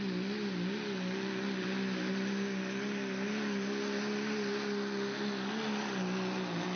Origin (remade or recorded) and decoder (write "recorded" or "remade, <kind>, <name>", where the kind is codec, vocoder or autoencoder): recorded